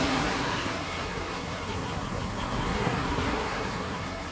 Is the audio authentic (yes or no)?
no